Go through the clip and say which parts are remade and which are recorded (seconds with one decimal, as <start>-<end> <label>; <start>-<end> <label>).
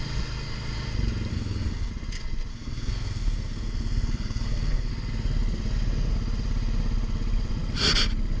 0.0-1.3 recorded; 1.3-1.9 remade; 1.9-2.5 recorded; 2.5-4.9 remade; 4.9-8.4 recorded